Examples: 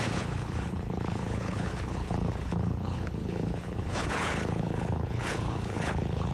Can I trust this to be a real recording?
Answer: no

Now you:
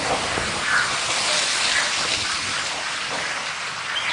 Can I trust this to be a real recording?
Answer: yes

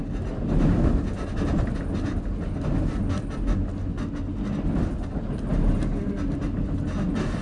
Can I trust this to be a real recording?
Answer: yes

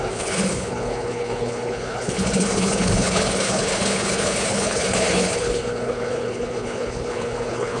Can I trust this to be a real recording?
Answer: no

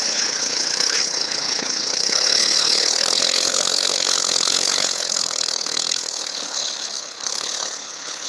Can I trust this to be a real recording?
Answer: no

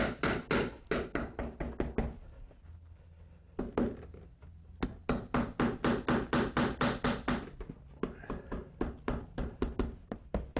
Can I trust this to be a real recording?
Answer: yes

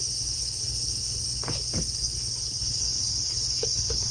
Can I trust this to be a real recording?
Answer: no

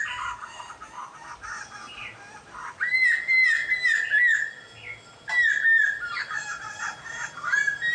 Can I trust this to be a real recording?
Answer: yes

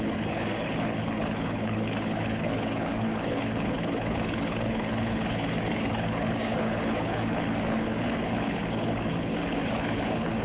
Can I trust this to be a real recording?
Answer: no